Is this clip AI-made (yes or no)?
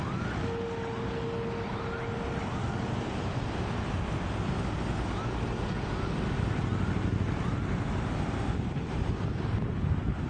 no